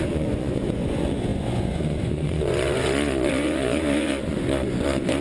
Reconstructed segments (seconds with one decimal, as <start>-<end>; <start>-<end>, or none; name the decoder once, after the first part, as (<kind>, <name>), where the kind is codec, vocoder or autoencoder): 0.0-5.2 (vocoder, Vocos)